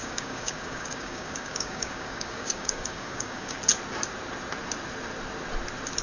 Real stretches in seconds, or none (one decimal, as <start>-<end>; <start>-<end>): 3.6-6.0

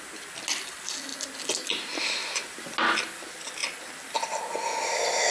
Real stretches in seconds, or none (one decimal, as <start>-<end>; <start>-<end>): 0.0-5.3

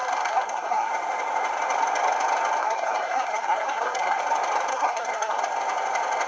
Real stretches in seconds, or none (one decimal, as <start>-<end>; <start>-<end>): 0.9-2.6; 4.2-4.7; 5.4-6.3

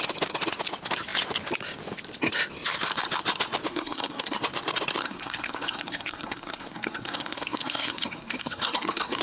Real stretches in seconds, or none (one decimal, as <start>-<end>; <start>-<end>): 0.0-3.7; 4.4-5.0

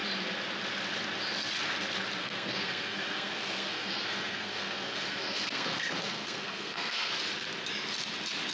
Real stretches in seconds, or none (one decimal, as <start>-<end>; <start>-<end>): 0.0-2.2; 7.1-8.5